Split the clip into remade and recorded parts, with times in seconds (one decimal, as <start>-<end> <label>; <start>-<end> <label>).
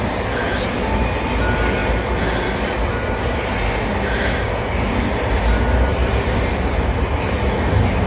0.0-8.1 recorded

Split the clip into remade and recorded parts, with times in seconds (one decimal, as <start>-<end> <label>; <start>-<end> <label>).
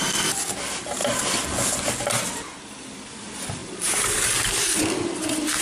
0.0-3.6 recorded; 3.6-4.8 remade; 4.8-5.6 recorded